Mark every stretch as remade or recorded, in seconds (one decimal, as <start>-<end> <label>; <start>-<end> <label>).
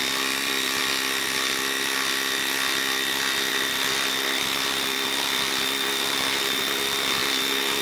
0.0-0.8 remade; 0.8-3.5 recorded; 3.5-7.8 remade